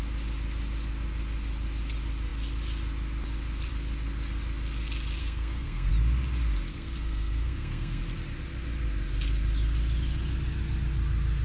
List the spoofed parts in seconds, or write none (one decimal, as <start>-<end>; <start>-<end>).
5.2-5.9; 6.7-8.0